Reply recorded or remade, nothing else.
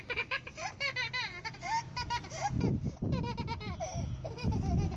recorded